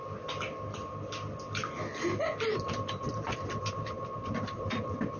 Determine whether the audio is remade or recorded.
recorded